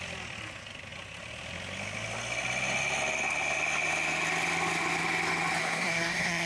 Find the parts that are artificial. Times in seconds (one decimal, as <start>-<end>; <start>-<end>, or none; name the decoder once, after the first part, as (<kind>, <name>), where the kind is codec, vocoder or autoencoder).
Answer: 5.6-6.5 (codec, SNAC)